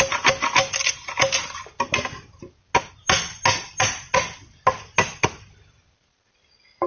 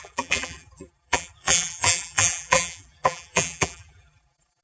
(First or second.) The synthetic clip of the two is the second